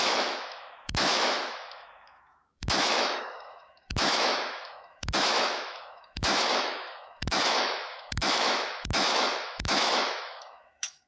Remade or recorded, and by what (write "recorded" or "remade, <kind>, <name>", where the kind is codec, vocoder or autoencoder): remade, autoencoder, DAC-VAE